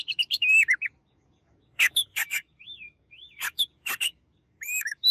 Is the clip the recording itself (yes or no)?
no